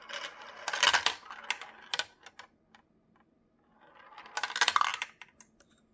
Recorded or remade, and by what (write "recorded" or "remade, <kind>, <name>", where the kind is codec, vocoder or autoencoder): recorded